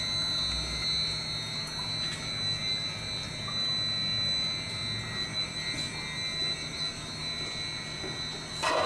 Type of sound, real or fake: real